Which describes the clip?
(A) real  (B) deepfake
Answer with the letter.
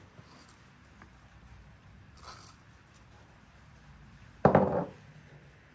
A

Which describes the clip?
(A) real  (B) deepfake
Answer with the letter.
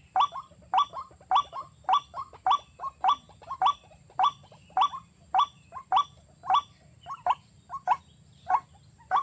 A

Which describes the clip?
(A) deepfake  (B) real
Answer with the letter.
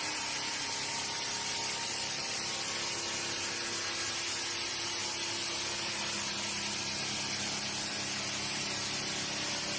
B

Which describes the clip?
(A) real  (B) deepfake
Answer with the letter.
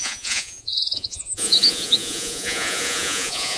B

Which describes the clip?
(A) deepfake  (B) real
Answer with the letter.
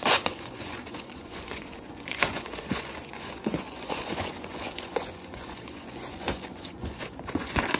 A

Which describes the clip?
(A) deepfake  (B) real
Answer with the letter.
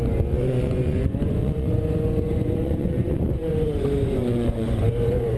A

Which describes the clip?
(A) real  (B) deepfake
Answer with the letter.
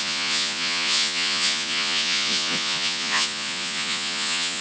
B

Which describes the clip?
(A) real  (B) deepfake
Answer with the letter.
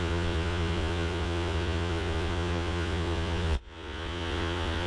B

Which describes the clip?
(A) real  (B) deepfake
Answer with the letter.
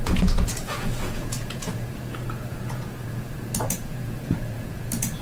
B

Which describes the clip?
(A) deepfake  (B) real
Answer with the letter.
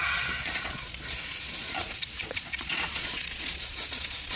A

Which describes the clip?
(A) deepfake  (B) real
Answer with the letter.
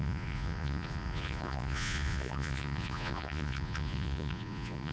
A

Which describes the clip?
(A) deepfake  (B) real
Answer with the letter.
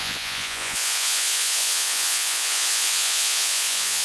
A